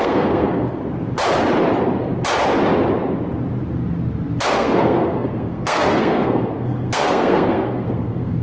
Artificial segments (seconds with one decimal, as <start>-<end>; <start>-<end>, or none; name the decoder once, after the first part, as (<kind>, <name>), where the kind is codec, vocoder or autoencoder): 0.0-0.8 (codec, SNAC); 4.5-8.4